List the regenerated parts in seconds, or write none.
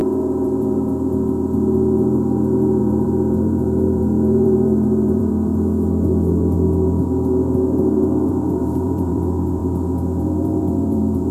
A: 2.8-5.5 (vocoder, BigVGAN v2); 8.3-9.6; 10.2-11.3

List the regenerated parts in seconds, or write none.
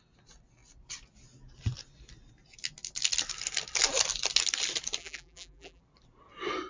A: 5.0-5.8 (vocoder, BigVGAN v2)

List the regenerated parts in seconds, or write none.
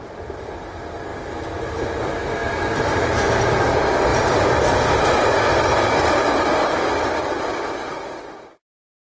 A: 2.4-3.1 (vocoder, BigVGAN v2); 4.1-4.9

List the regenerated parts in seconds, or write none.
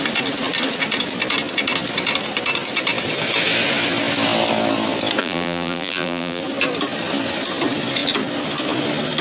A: 5.2-6.4 (vocoder, BigVGAN v2)